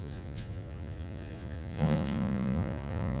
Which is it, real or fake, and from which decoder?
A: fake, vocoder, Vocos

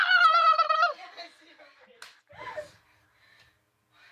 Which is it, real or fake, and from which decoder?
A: real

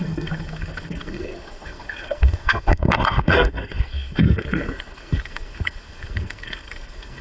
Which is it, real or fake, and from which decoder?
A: fake, codec, SNAC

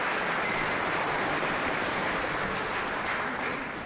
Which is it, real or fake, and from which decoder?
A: real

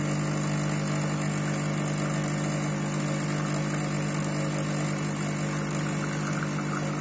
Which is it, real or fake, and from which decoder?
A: real